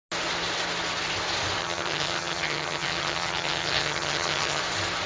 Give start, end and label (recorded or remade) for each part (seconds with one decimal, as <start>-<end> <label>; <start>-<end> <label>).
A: 0.0-1.6 recorded; 1.6-4.6 remade; 4.6-5.1 recorded